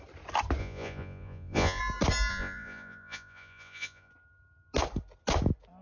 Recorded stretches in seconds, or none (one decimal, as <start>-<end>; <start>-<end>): 0.0-0.6; 1.8-2.3; 4.1-5.8